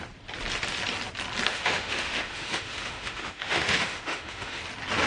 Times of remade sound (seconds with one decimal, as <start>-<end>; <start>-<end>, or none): 1.5-4.6